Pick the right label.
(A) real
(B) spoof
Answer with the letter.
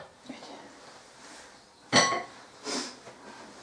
A